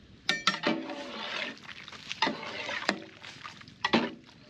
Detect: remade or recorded recorded